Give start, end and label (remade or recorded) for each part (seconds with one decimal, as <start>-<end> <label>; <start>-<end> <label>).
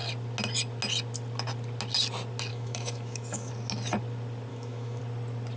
0.0-2.5 recorded; 2.5-3.5 remade; 3.5-4.5 recorded; 4.5-5.0 remade; 5.0-5.6 recorded